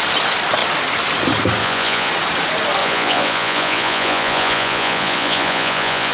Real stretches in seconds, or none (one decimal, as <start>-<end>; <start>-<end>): 0.0-1.6; 2.1-2.8